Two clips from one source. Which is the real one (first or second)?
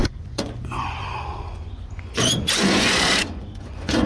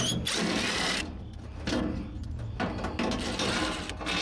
second